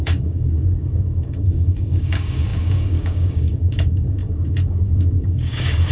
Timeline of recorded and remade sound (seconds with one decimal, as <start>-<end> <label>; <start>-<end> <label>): 0.0-5.9 remade